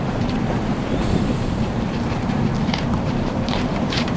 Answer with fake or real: fake